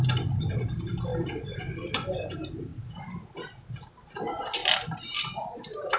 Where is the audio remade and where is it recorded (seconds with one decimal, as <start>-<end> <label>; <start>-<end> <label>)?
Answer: 0.0-1.1 recorded; 1.1-1.6 remade; 1.6-6.0 recorded